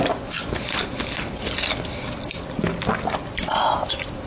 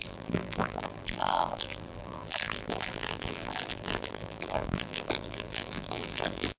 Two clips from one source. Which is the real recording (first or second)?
first